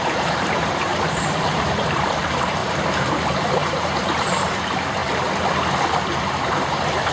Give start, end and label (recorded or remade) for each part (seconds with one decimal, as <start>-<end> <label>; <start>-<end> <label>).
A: 0.0-5.0 remade; 5.0-6.2 recorded; 6.2-7.1 remade